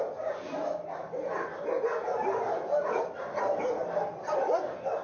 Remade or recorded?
recorded